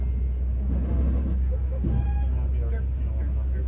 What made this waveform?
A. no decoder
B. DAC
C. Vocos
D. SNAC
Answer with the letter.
A